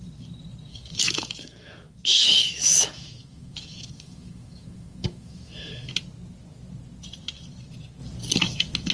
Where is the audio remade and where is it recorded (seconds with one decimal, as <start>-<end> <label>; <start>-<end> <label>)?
0.0-0.7 recorded; 0.7-5.9 remade; 5.9-8.9 recorded